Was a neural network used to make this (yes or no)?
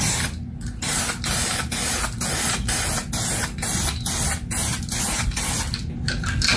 no